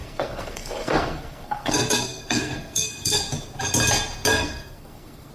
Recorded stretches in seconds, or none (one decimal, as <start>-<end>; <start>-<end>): 3.2-4.3